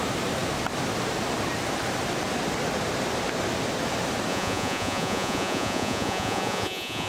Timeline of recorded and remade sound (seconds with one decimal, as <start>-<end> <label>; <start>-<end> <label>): 0.0-4.3 recorded; 4.3-7.1 remade

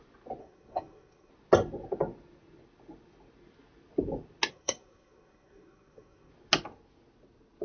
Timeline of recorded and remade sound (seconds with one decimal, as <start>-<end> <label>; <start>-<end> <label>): 0.0-0.4 recorded; 0.4-1.3 remade; 1.3-4.5 recorded; 4.5-6.3 remade; 6.3-7.6 recorded

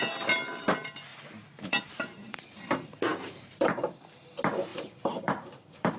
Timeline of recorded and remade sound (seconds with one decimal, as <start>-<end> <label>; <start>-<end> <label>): 0.0-1.1 recorded; 1.1-2.6 remade; 2.6-3.1 recorded; 3.1-4.0 remade; 4.0-4.7 recorded; 4.7-6.0 remade

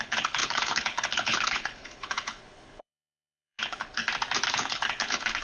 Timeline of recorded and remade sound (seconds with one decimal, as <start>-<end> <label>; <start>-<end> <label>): 0.0-4.0 remade; 4.0-4.5 recorded; 4.5-5.4 remade

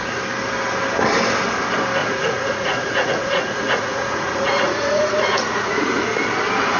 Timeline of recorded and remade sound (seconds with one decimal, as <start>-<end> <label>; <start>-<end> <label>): 0.0-2.0 recorded; 2.0-6.1 remade; 6.1-6.8 recorded

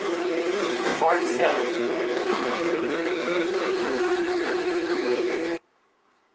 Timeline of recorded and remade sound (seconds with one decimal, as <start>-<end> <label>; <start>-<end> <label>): 0.0-6.3 remade

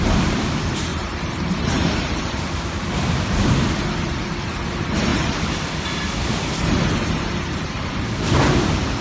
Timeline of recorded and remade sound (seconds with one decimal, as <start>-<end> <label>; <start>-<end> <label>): 0.0-0.9 recorded; 0.9-3.0 remade; 3.0-5.1 recorded; 5.1-5.7 remade; 5.7-9.0 recorded

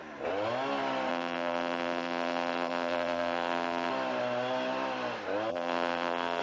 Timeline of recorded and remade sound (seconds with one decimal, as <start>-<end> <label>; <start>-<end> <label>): 0.0-1.1 recorded; 1.1-3.9 remade; 3.9-5.5 recorded; 5.5-6.4 remade